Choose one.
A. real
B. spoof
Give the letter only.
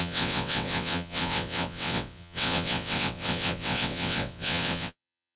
B